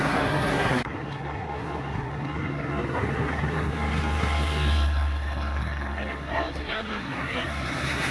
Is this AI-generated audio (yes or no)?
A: yes